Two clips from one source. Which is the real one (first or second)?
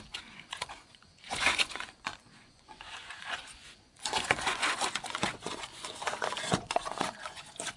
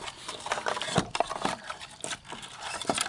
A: second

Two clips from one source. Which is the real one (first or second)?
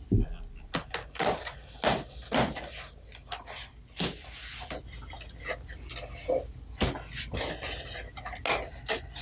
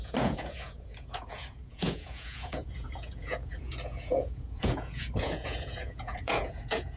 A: first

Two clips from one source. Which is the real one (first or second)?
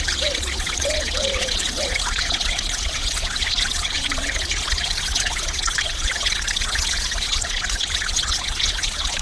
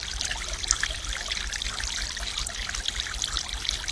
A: second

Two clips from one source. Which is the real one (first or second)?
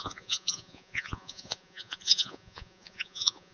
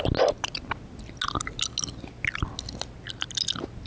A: second